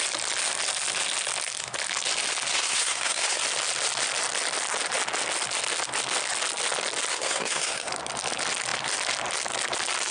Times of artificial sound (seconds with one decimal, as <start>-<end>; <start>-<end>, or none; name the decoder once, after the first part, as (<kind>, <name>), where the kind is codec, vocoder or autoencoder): 2.5-3.4 (codec, SNAC); 7.1-7.9